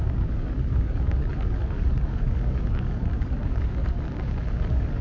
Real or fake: fake